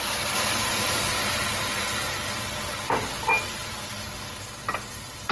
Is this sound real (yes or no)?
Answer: yes